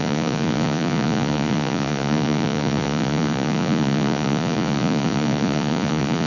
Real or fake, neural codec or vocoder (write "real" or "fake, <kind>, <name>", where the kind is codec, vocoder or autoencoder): fake, vocoder, Vocos